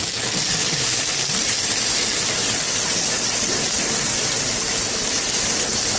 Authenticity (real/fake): real